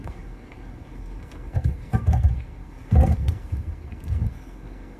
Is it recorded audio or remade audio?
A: remade